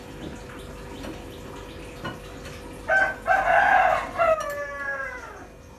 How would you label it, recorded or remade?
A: recorded